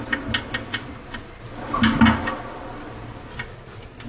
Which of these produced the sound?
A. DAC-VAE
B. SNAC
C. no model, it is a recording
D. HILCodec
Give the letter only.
C